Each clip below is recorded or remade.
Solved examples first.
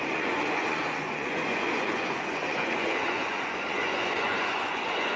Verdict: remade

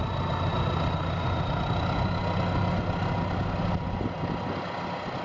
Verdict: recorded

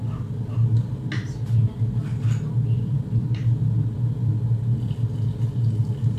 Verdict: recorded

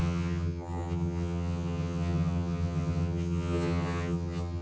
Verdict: remade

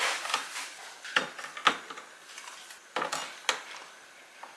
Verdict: recorded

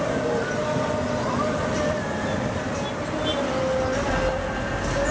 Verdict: recorded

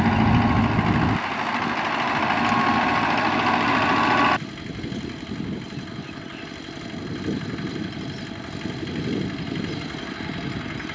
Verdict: recorded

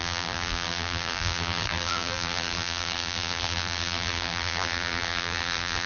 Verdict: remade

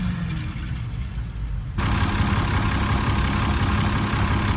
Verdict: recorded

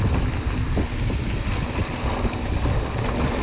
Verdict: recorded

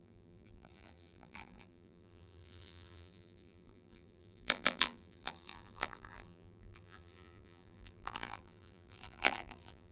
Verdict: remade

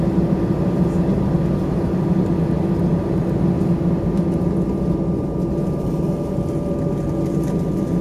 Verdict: recorded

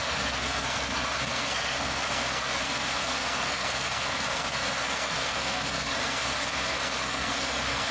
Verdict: remade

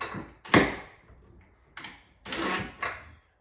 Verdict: recorded